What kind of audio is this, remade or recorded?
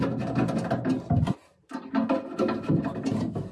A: recorded